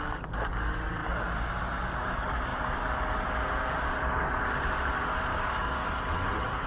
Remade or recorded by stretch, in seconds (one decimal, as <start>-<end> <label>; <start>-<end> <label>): 0.0-5.3 recorded; 5.3-5.9 remade; 5.9-6.7 recorded